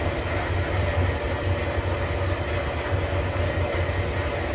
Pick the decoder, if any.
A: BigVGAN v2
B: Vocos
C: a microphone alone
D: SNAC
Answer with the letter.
C